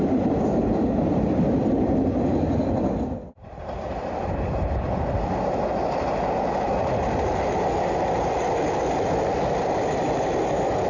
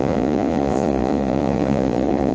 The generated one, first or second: second